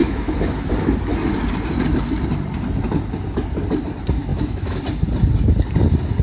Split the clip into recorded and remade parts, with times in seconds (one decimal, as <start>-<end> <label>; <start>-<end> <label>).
0.0-0.7 remade; 0.7-4.3 recorded; 4.3-4.8 remade; 4.8-6.2 recorded